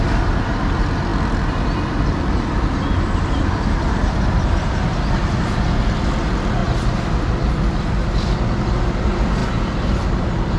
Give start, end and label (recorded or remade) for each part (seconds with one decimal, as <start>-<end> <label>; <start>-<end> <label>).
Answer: 0.0-6.6 recorded; 6.6-7.3 remade; 7.3-10.6 recorded